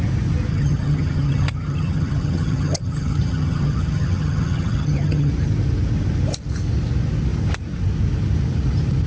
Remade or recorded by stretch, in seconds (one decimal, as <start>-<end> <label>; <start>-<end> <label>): 0.0-0.5 recorded; 0.5-5.3 remade; 5.3-9.1 recorded